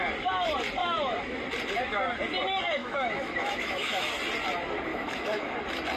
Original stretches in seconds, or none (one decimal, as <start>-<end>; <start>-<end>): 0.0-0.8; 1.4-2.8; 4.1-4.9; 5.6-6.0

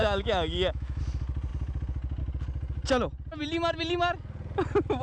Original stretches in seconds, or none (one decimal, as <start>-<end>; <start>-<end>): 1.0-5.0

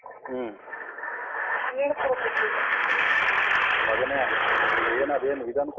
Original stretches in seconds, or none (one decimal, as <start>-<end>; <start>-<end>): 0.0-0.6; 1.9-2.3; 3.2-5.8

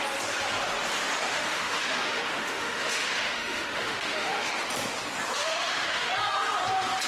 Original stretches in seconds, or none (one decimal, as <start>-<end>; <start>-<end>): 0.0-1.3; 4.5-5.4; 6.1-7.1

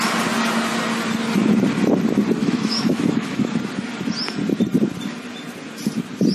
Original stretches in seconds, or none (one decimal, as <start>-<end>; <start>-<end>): 0.0-2.4; 3.5-6.3

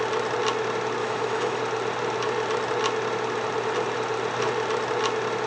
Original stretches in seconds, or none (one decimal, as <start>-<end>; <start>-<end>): 0.0-1.0; 1.6-5.5

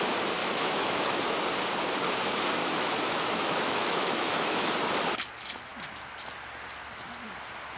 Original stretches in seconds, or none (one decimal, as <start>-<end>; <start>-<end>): 0.0-0.4; 1.2-2.6; 4.7-7.8

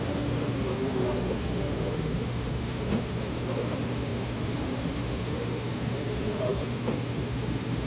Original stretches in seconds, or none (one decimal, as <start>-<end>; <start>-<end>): none